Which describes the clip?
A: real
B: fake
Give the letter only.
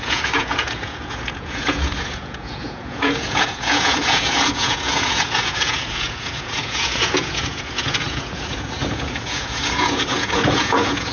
B